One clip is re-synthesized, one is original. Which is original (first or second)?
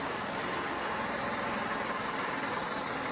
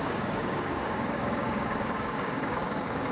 first